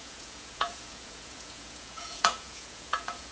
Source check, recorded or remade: remade